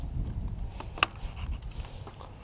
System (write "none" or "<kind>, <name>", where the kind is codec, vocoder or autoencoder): none